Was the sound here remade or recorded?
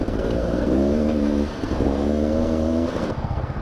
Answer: remade